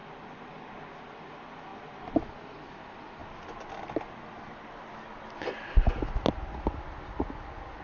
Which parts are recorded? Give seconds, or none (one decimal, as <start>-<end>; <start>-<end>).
0.0-7.8